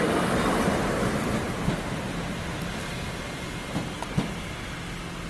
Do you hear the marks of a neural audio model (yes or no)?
no